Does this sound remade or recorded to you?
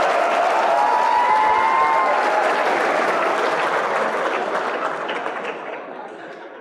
recorded